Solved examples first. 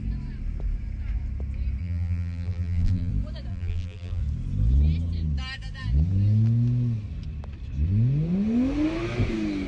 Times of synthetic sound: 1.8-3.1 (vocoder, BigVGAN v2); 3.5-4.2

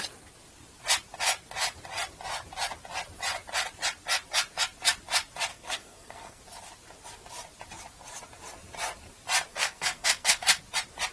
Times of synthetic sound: 5.5-6.4 (codec, SNAC); 9.5-10.6

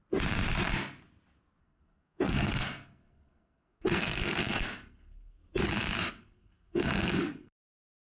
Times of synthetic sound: 1.6-5.4 (codec, SNAC); 6.1-8.1

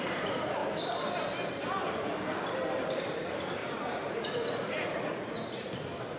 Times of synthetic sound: 3.6-5.7 (vocoder, Vocos)